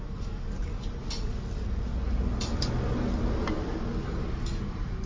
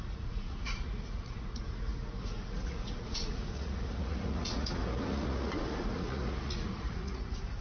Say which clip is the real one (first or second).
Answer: first